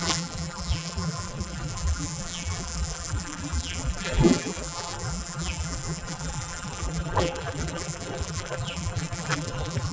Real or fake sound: fake